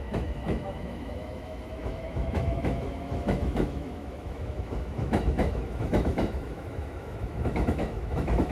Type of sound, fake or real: fake